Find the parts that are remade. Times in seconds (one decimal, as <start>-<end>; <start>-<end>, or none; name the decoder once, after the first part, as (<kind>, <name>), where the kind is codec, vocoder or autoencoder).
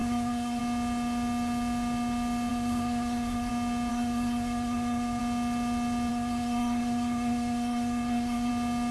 0.0-0.6 (codec, SNAC); 2.5-3.5; 3.9-5.2; 6.1-8.5